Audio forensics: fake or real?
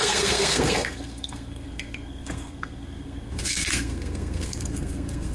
fake